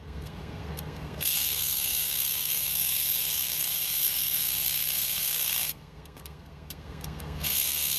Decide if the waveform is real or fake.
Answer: fake